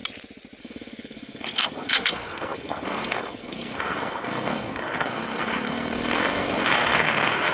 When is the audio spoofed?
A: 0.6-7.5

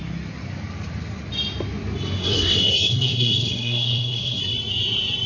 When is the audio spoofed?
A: 2.2-4.4